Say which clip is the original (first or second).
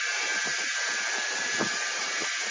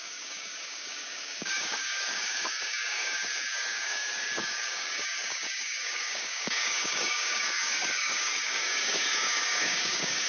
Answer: first